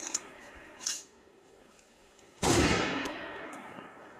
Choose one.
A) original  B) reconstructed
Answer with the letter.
B